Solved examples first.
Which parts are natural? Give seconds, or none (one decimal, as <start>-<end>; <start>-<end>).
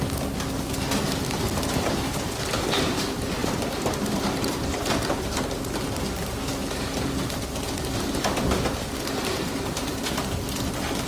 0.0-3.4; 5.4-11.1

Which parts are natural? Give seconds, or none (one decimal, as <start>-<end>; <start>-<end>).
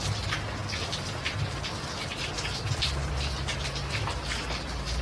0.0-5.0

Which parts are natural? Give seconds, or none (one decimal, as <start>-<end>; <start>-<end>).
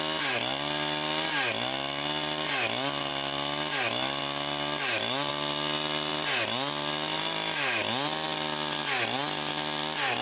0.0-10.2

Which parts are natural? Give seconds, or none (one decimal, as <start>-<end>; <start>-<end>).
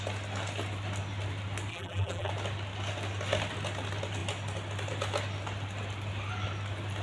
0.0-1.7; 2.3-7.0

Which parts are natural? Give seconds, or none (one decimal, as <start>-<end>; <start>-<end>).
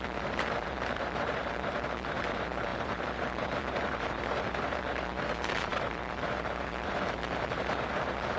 none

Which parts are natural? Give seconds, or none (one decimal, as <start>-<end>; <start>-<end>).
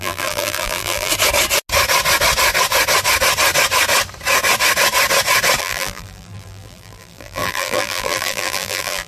1.1-5.6